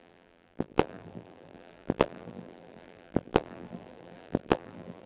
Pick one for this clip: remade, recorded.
remade